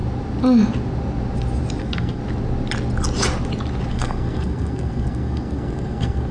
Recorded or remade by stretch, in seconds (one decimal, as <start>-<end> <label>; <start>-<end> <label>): 0.0-1.8 recorded; 1.8-2.2 remade; 2.2-3.9 recorded; 3.9-6.3 remade